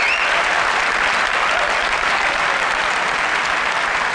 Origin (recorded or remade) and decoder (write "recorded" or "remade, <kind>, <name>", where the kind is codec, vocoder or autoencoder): recorded